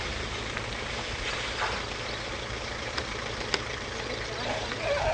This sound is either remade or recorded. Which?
remade